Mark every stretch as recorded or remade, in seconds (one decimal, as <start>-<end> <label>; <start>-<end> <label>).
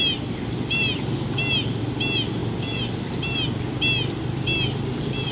0.0-5.3 recorded